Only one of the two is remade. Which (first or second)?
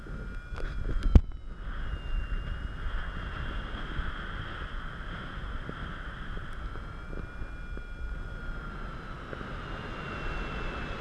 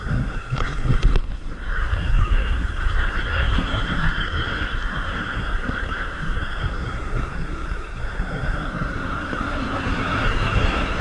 second